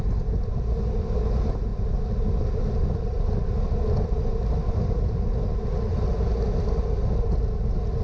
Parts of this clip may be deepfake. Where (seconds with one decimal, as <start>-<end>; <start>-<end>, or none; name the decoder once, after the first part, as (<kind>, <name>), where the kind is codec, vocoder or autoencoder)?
none